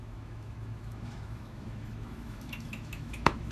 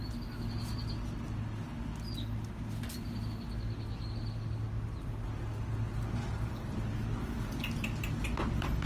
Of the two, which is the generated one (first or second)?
first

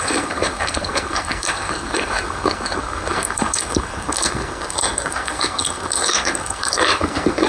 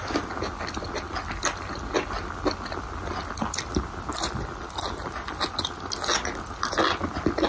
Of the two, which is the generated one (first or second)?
first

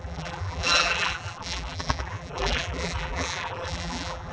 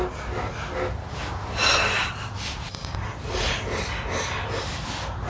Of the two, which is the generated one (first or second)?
first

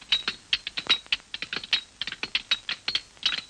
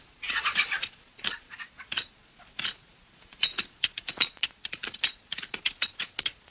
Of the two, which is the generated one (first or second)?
second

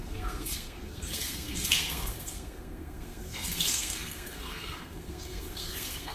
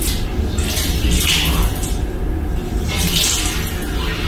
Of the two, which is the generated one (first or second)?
first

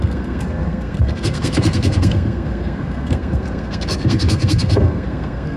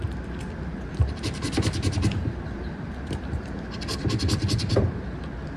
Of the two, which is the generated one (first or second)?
first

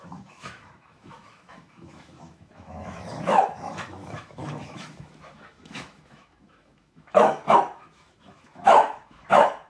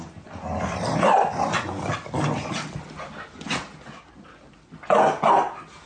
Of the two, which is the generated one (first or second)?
first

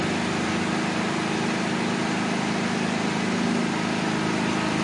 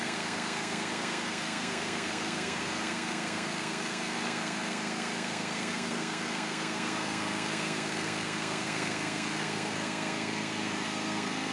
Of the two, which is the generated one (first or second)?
second